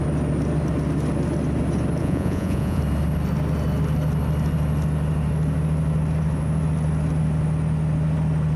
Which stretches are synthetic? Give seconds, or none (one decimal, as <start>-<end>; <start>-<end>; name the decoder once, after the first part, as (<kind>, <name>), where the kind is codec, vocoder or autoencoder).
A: 2.0-2.8 (vocoder, Vocos)